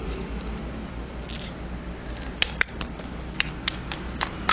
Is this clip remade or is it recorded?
recorded